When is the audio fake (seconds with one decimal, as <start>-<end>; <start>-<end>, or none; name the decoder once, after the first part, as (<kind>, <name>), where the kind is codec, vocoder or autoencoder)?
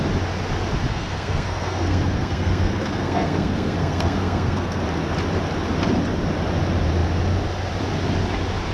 0.9-4.8 (codec, SNAC)